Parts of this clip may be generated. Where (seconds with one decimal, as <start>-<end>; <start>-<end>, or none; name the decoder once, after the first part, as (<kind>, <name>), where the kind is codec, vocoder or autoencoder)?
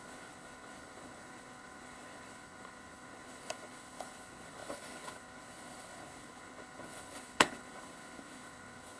0.0-9.0 (codec, HILCodec)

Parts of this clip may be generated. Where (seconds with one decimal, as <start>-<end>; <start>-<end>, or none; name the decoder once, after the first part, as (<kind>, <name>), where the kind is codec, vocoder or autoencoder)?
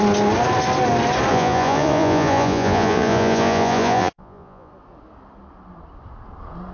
1.3-4.7 (vocoder, Vocos)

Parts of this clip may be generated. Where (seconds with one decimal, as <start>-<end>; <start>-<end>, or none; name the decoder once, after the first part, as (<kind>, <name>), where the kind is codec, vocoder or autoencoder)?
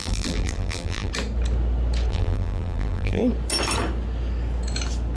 0.0-1.1 (vocoder, BigVGAN v2); 2.1-3.2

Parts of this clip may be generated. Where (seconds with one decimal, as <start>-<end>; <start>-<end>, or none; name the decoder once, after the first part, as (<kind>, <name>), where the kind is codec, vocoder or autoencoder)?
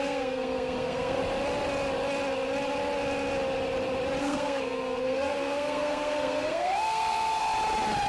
0.0-1.2 (codec, SNAC); 4.2-7.4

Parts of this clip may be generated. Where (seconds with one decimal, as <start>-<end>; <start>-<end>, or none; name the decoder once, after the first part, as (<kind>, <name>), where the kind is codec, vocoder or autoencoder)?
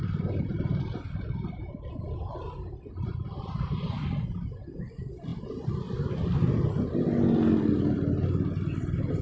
none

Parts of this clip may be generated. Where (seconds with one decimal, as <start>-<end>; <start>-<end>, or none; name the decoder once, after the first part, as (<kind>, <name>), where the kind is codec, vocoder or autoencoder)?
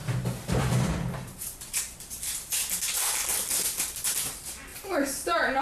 0.0-2.3 (vocoder, BigVGAN v2); 3.3-4.3; 4.7-5.6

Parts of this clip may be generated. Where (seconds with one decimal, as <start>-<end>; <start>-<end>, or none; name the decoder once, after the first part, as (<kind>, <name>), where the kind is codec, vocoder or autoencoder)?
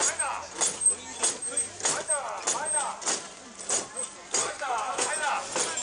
4.4-5.1 (codec, SNAC)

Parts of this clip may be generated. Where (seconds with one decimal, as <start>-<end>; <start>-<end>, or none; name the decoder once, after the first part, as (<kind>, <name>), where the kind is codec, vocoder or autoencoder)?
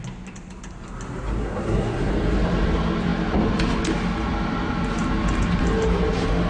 1.4-2.1 (codec, SNAC)